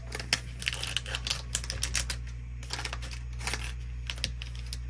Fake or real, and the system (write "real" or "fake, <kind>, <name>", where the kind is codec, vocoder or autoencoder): real